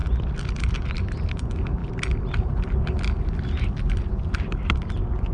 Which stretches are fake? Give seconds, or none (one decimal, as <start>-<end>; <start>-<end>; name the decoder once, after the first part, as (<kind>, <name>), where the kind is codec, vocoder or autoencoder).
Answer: none